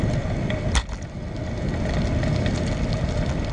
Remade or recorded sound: recorded